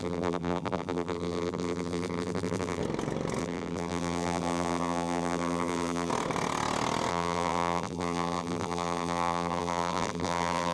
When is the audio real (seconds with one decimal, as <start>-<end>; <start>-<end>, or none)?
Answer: 2.8-3.4; 6.1-7.1